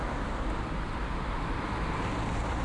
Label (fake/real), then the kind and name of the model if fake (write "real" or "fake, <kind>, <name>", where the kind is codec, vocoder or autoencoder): real